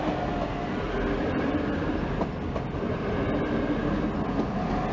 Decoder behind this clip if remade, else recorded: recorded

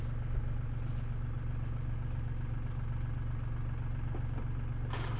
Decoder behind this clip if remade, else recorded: recorded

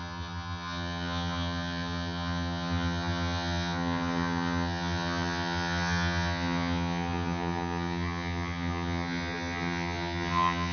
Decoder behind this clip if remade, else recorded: remade, vocoder, HiFi-GAN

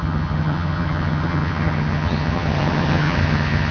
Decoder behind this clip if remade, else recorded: remade, vocoder, HiFi-GAN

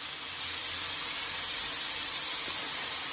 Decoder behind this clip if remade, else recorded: recorded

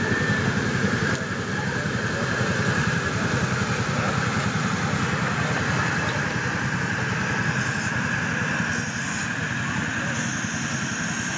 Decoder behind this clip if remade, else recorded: recorded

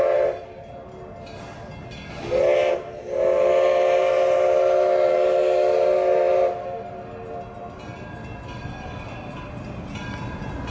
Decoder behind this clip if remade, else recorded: recorded